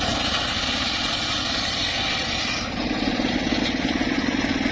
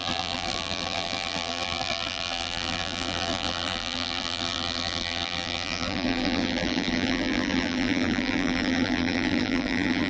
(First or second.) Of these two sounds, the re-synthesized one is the second